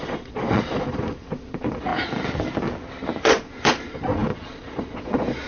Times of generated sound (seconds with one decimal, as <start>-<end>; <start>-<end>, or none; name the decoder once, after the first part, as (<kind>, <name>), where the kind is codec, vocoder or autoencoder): 0.0-1.9 (vocoder, Vocos); 3.2-5.5